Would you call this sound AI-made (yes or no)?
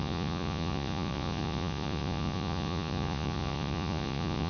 yes